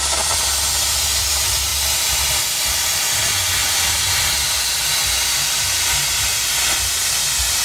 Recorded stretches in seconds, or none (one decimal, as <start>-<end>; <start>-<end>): 0.0-7.6